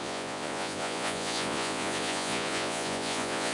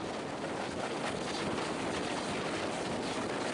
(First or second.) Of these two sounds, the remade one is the first